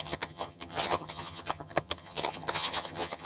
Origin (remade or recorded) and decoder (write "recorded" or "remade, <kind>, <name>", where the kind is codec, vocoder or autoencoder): remade, vocoder, HiFi-GAN